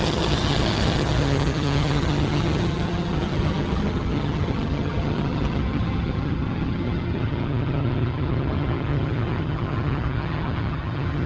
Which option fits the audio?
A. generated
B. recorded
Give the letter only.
A